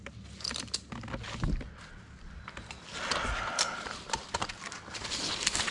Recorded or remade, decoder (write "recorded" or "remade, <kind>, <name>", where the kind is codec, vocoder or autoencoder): recorded